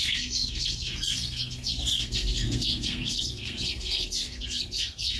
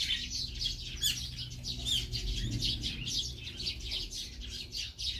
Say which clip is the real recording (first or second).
second